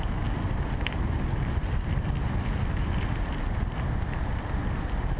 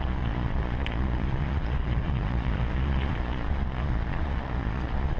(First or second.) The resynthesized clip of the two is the second